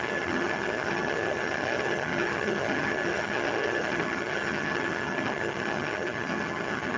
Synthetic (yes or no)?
yes